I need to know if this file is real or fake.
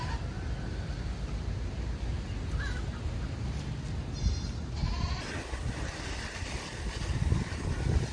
real